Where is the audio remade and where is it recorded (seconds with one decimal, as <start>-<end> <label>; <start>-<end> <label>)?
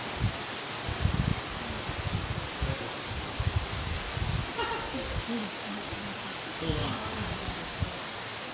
0.0-5.4 recorded; 5.4-6.0 remade; 6.0-6.8 recorded; 6.8-7.7 remade; 7.7-8.5 recorded